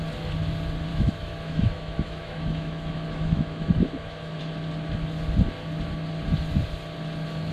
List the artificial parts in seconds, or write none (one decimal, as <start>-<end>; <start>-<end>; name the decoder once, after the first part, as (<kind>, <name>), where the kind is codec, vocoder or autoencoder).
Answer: 0.9-4.4 (autoencoder, DAC-VAE)